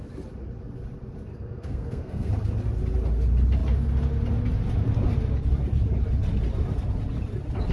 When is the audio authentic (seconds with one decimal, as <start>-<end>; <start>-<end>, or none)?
0.0-1.3; 2.3-7.7